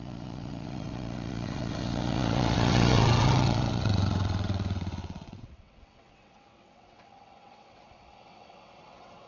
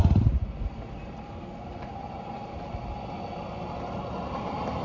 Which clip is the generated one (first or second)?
first